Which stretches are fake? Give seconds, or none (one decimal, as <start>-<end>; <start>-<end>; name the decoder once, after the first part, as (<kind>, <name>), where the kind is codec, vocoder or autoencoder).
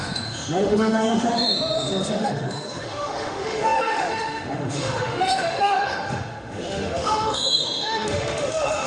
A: 0.0-8.9 (autoencoder, DAC-VAE)